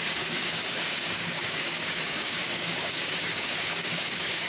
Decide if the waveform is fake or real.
fake